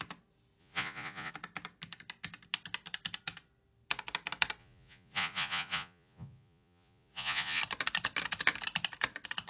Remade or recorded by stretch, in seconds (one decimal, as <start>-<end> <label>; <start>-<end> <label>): 0.0-0.6 recorded; 0.6-1.3 remade; 1.3-4.6 recorded; 4.6-7.6 remade; 7.6-9.5 recorded